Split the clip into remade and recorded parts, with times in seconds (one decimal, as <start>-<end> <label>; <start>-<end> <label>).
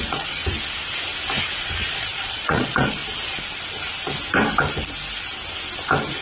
0.0-0.4 remade; 0.4-1.6 recorded; 1.6-3.0 remade; 3.0-6.2 recorded